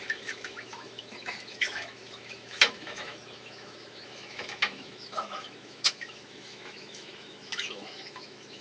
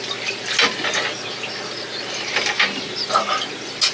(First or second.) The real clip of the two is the second